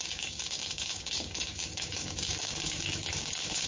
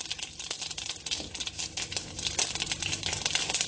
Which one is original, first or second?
second